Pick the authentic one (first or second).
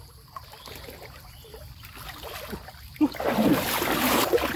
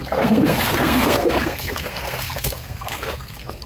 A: first